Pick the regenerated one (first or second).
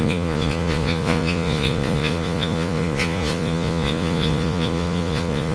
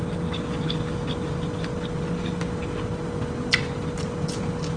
first